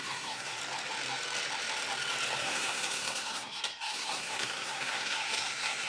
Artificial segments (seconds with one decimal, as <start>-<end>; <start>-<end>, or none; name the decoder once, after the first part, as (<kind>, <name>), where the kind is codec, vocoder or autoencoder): 0.0-0.6 (codec, SNAC); 2.4-5.9